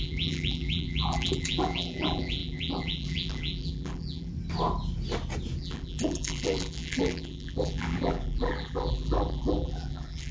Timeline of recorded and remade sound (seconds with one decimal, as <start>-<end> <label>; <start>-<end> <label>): 0.0-4.3 remade; 4.3-5.6 recorded; 5.6-10.3 remade